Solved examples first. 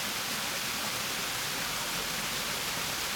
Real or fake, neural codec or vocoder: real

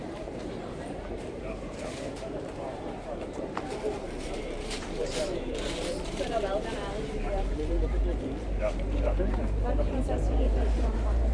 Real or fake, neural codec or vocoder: fake, vocoder, BigVGAN v2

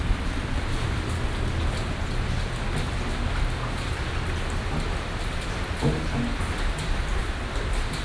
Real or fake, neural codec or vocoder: real